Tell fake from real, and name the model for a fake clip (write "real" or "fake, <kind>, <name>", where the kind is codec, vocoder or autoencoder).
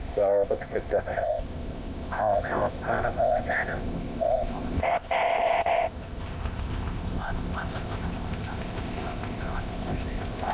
fake, codec, ZipCodec